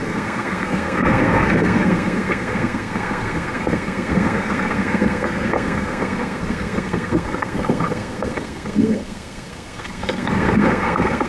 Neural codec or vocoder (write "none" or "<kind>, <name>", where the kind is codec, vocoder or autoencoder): codec, SNAC